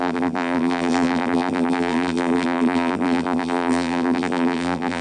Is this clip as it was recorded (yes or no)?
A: no